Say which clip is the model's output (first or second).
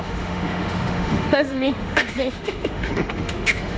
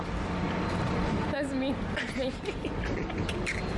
first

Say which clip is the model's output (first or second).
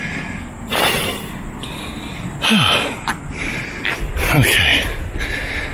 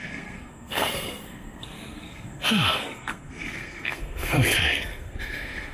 second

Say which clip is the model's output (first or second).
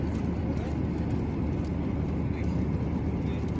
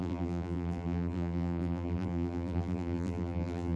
second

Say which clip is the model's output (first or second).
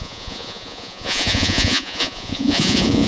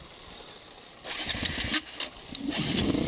first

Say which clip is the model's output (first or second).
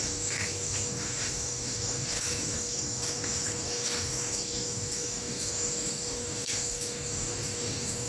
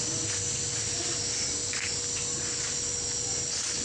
first